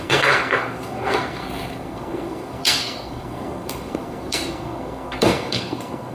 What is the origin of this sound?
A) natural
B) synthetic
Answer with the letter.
B